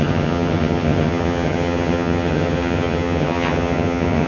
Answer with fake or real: fake